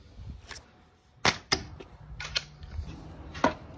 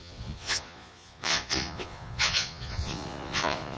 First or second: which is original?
first